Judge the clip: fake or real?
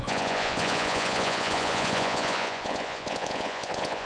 fake